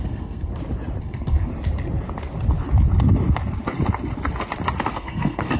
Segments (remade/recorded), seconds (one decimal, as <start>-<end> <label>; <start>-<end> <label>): 0.0-0.5 remade; 0.5-1.0 recorded; 1.0-1.5 remade; 1.5-4.9 recorded; 4.9-5.6 remade